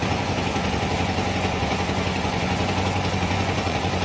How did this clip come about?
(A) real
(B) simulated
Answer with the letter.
B